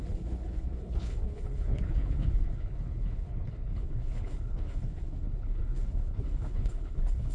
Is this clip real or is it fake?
fake